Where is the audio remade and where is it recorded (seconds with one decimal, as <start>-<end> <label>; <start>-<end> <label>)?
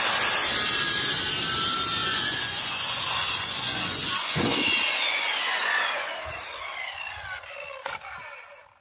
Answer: 0.0-2.0 recorded; 2.0-6.1 remade; 6.1-8.8 recorded